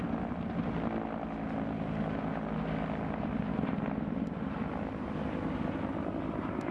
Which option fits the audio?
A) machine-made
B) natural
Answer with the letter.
B